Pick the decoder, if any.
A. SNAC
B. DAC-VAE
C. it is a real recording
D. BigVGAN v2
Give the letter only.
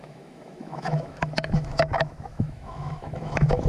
B